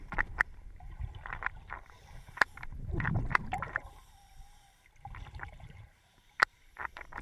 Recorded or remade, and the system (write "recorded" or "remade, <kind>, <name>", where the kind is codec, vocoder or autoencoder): remade, vocoder, BigVGAN v2